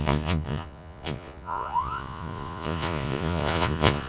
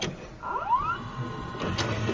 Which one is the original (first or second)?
second